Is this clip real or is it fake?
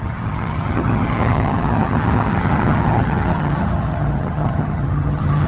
fake